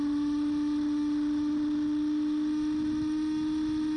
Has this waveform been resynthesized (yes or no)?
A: no